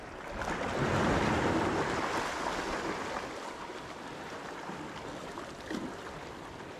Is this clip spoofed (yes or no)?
no